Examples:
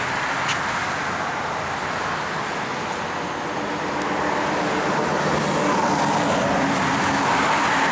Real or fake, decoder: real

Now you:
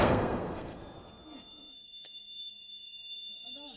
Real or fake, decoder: fake, codec, SNAC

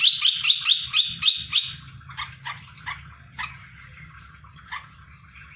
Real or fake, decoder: real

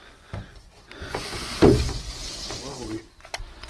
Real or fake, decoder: fake, vocoder, Vocos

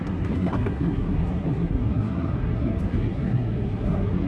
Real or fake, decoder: fake, codec, SNAC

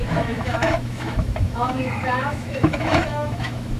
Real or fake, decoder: fake, autoencoder, DAC-VAE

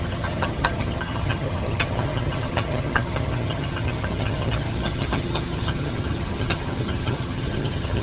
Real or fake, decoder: fake, vocoder, HiFi-GAN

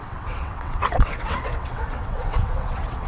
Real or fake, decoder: fake, vocoder, WaveNeXt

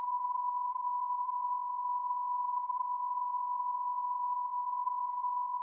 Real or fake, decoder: fake, codec, SNAC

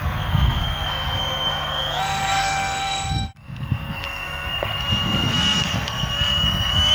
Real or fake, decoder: fake, codec, SNAC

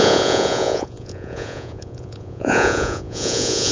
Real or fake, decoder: fake, vocoder, Vocos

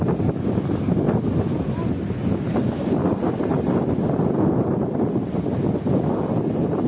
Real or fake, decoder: real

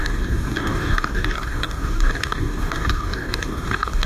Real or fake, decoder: fake, codec, DAC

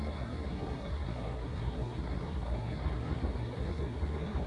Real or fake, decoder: fake, codec, SNAC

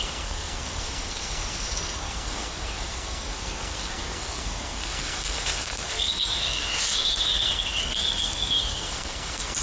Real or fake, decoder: fake, codec, SNAC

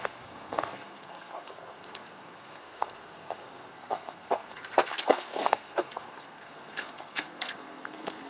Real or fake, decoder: fake, codec, SNAC